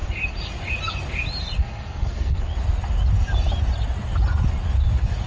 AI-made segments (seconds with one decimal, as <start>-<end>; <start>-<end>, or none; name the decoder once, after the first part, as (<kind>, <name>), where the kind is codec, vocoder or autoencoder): 1.6-2.4 (codec, SNAC)